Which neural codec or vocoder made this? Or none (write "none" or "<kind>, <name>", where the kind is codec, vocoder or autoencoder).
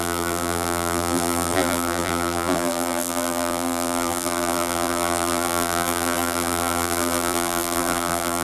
vocoder, BigVGAN v2